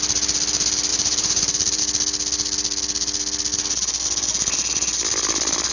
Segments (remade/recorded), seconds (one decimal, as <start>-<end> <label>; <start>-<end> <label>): 0.0-0.9 recorded; 0.9-1.8 remade; 1.8-5.7 recorded